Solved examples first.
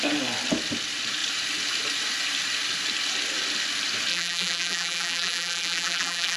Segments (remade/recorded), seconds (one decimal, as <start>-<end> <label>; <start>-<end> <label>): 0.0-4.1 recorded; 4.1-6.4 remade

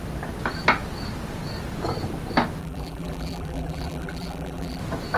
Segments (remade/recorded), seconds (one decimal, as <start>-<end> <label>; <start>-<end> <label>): 0.0-2.6 recorded; 2.6-4.8 remade; 4.8-5.2 recorded

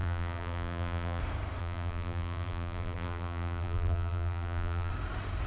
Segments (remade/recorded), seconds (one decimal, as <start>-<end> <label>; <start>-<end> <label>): 0.0-1.2 remade; 1.2-1.6 recorded; 1.6-4.9 remade; 4.9-5.5 recorded